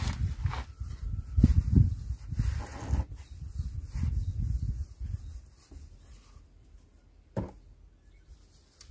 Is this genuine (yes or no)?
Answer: yes